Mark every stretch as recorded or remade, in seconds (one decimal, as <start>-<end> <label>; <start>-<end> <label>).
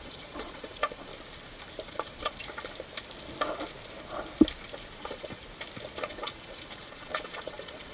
0.0-1.1 remade; 1.1-1.9 recorded; 1.9-2.4 remade; 2.4-5.0 recorded; 5.0-5.4 remade; 5.4-6.0 recorded; 6.0-7.9 remade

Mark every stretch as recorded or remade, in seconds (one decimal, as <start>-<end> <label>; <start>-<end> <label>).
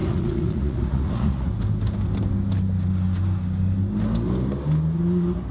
0.0-1.5 remade; 1.5-5.5 recorded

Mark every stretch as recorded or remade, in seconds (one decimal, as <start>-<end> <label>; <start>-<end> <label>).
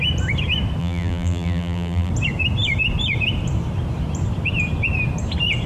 0.0-0.8 recorded; 0.8-2.1 remade; 2.1-5.7 recorded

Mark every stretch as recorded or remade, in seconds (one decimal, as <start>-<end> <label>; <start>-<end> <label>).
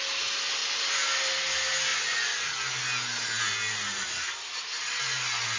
0.0-1.9 recorded; 1.9-2.5 remade; 2.5-5.6 recorded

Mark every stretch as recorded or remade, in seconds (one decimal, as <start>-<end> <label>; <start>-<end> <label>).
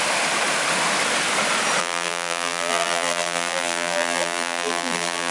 0.0-1.8 recorded; 1.8-5.3 remade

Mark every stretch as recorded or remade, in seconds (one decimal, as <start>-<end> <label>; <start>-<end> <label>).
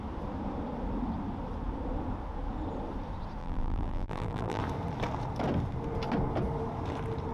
0.0-3.4 recorded; 3.4-4.6 remade; 4.6-7.3 recorded